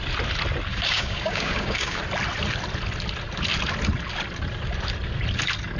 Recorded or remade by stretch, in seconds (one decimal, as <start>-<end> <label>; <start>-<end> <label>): 0.0-0.7 recorded; 0.7-2.0 remade; 2.0-5.8 recorded

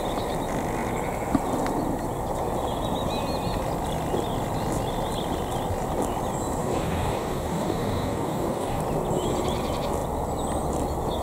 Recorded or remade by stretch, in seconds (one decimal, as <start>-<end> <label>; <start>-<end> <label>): 0.0-6.6 recorded; 6.6-8.8 remade; 8.8-11.2 recorded